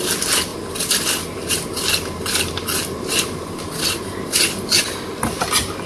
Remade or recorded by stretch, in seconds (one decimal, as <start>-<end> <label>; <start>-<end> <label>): 0.0-5.9 recorded